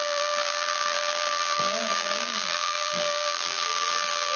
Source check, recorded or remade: remade